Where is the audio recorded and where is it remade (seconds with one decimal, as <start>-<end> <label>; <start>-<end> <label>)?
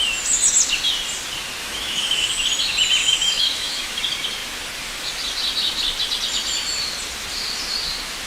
0.0-1.6 recorded; 1.6-2.3 remade; 2.3-3.0 recorded; 3.0-4.0 remade; 4.0-8.3 recorded